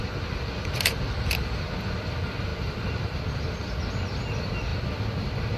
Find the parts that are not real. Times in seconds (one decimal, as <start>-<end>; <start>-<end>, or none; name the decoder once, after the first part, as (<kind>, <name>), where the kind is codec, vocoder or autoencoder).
2.5-3.2 (vocoder, BigVGAN v2)